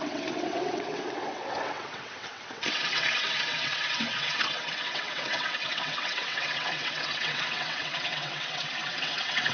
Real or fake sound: fake